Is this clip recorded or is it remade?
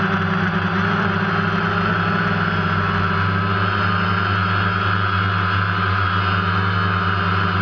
recorded